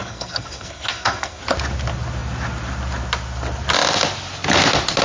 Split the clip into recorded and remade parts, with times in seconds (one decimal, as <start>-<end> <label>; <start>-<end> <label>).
0.0-1.4 remade; 1.4-5.0 recorded